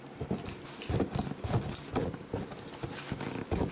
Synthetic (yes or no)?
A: no